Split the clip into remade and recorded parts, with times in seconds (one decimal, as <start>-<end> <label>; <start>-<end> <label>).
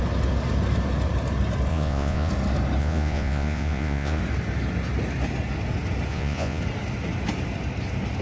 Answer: 0.0-1.7 recorded; 1.7-2.3 remade; 2.3-2.8 recorded; 2.8-4.2 remade; 4.2-6.1 recorded; 6.1-6.6 remade; 6.6-8.2 recorded